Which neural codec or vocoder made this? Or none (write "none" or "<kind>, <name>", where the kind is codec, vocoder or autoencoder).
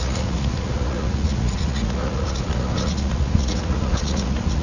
vocoder, Vocos